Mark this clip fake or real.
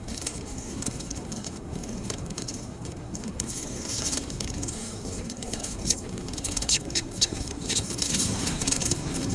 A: fake